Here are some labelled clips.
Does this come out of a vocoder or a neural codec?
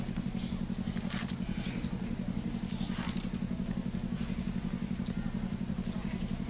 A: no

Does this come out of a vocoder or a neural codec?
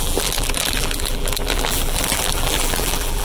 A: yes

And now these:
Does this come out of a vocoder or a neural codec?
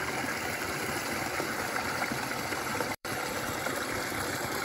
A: yes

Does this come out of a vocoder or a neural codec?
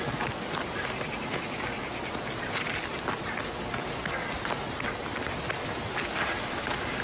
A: yes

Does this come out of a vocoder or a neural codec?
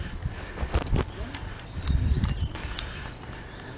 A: no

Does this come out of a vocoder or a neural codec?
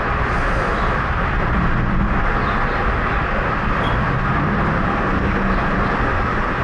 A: no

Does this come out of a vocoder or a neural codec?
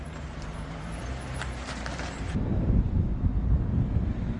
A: yes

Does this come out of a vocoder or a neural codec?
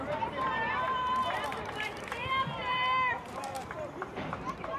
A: yes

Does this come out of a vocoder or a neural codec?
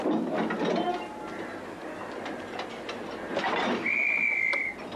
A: no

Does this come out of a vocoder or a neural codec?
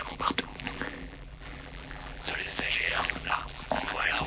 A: yes